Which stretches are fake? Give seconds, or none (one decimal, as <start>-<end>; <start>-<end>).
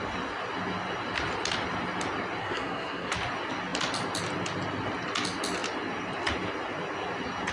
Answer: 2.4-3.1